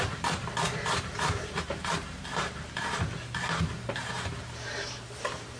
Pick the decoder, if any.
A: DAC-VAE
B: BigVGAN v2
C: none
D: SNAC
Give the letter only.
B